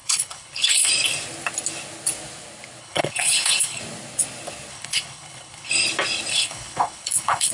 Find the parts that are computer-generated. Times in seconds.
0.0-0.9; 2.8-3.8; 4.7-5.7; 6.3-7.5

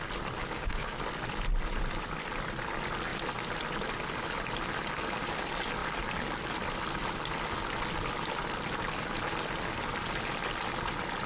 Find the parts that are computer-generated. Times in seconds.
0.4-1.0

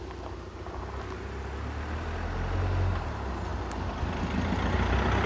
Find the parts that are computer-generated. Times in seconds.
none

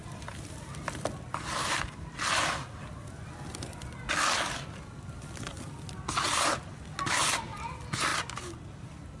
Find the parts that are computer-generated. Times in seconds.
0.0-2.4

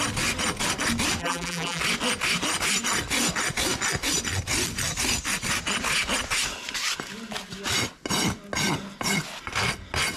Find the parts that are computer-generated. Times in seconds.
1.2-1.8

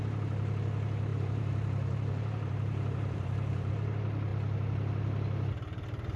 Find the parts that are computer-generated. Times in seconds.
1.1-3.7

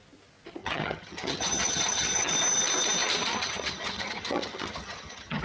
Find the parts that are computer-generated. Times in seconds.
0.6-2.3; 3.3-5.4